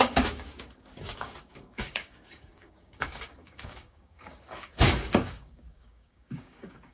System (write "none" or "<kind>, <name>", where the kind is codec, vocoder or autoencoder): codec, DAC